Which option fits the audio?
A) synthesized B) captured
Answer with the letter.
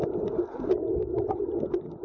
B